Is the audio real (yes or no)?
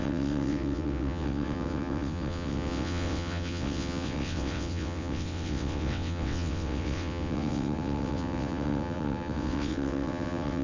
no